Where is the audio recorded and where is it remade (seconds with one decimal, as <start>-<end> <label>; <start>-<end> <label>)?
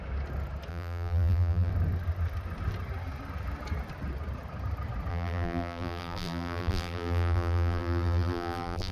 0.0-0.7 recorded; 0.7-1.7 remade; 1.7-5.1 recorded; 5.1-8.9 remade